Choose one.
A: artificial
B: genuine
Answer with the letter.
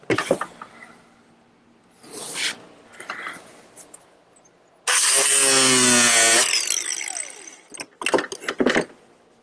B